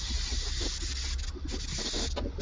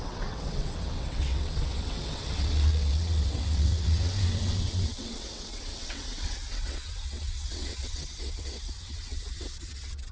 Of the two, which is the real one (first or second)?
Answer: first